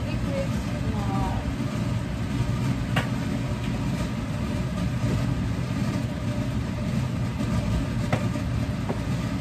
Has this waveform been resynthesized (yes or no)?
no